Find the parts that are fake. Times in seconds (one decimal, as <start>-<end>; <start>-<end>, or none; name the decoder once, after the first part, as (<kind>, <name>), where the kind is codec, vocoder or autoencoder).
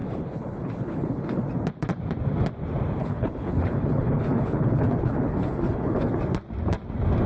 0.0-1.5 (codec, HILCodec); 3.0-6.1